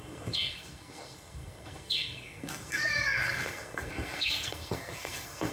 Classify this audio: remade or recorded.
remade